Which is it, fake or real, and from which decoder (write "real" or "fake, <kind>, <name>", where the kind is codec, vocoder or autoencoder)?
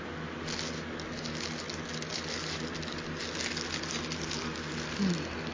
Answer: real